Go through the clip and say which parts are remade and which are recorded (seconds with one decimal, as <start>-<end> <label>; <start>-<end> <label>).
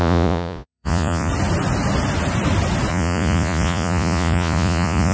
0.0-1.3 remade; 1.3-2.9 recorded; 2.9-5.1 remade